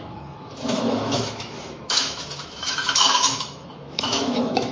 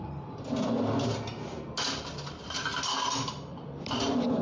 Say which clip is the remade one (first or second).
first